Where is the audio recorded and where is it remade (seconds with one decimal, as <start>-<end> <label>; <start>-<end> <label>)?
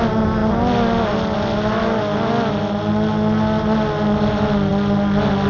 0.0-5.5 recorded